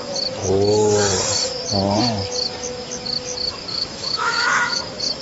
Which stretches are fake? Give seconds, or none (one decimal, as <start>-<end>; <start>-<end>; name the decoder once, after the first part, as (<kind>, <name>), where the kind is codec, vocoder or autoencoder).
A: 3.7-4.8 (autoencoder, DAC-VAE)